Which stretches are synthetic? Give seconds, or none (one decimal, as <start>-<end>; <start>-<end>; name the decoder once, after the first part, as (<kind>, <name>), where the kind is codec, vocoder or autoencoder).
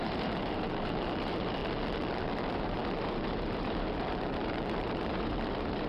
0.0-1.6 (vocoder, BigVGAN v2); 2.2-5.9